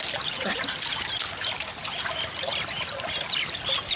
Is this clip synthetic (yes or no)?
no